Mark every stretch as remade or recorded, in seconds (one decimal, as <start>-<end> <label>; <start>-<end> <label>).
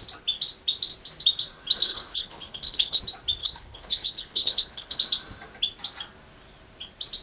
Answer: 0.0-1.9 recorded; 1.9-3.0 remade; 3.0-3.4 recorded; 3.4-5.0 remade; 5.0-7.2 recorded